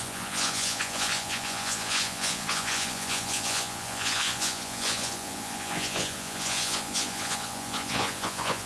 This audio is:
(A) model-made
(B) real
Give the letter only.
A